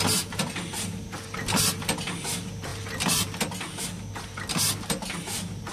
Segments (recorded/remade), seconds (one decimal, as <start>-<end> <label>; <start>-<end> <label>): 0.0-5.7 recorded